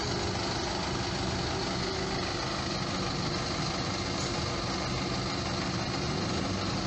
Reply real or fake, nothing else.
real